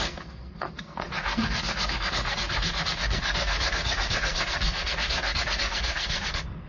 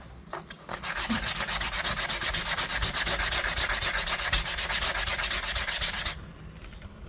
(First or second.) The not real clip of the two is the first